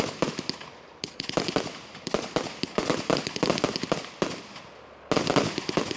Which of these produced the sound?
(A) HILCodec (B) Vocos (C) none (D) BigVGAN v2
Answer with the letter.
C